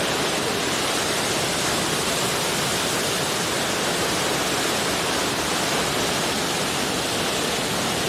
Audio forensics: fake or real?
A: real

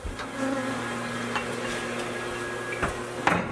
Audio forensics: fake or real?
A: real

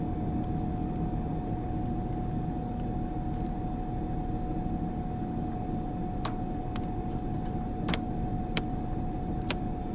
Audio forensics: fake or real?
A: real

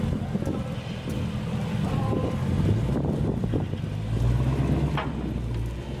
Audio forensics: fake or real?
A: real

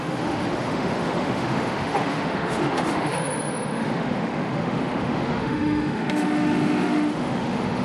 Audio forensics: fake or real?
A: fake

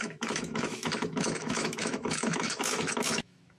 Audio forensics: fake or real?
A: fake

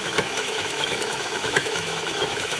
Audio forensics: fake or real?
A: fake